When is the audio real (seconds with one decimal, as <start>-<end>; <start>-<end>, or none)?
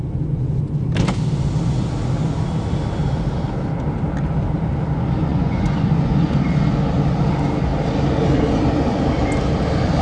0.0-5.2; 6.3-10.0